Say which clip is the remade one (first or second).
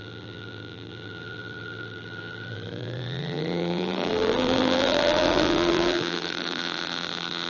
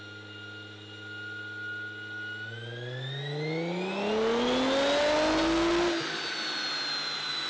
first